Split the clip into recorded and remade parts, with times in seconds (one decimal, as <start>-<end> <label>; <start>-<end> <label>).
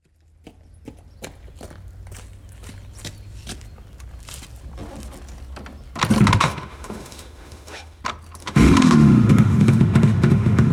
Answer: 0.0-6.4 recorded; 6.4-8.0 remade; 8.0-8.4 recorded; 8.4-10.7 remade